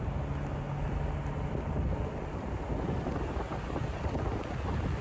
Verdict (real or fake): real